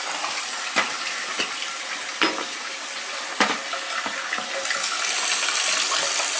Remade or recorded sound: recorded